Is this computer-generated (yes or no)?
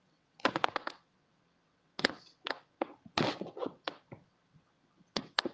yes